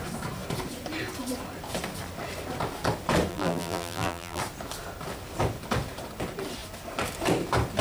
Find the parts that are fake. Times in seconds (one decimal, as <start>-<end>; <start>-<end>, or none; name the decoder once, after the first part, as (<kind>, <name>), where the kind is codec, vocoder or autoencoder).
3.3-4.4 (vocoder, BigVGAN v2)